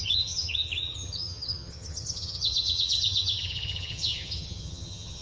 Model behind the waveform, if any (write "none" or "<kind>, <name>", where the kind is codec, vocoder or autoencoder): vocoder, HiFi-GAN